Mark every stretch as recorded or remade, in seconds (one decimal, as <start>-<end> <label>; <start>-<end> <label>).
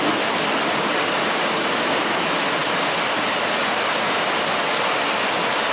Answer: 0.0-5.7 recorded